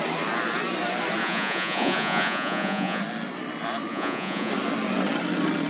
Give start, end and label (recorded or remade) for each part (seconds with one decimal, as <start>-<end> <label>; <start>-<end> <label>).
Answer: 0.0-1.2 recorded; 1.2-3.0 remade; 3.0-3.9 recorded; 3.9-4.5 remade; 4.5-5.7 recorded